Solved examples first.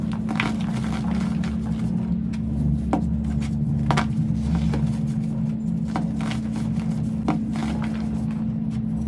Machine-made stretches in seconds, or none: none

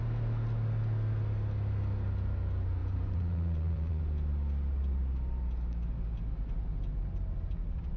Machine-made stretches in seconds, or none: 2.8-4.0

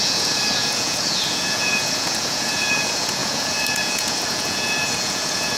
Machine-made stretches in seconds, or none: 0.0-5.6

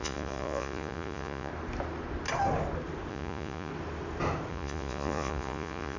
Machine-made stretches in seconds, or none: 0.0-1.5; 3.1-3.7; 4.5-6.0

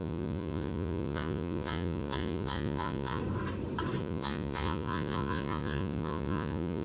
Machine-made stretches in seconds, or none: 0.0-3.2; 4.0-6.8

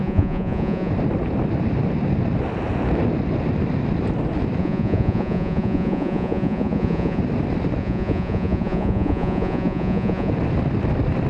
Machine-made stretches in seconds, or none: 0.0-0.9; 4.6-7.2; 7.8-10.3

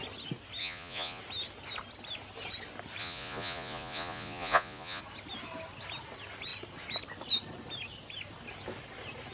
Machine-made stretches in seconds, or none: 0.6-1.2; 3.0-5.0

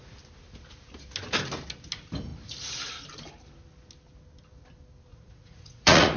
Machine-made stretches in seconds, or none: 5.1-6.2